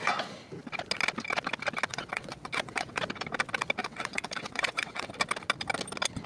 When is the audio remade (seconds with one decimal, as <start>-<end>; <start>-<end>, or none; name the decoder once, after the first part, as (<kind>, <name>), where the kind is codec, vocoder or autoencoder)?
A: 1.9-3.0 (vocoder, WaveNeXt); 3.8-5.1